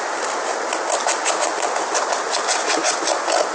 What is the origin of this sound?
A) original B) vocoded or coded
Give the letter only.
A